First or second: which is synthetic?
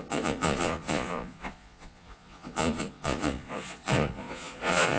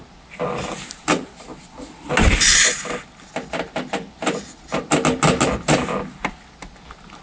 first